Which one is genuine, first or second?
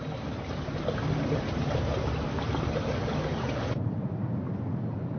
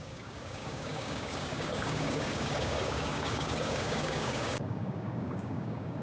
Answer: first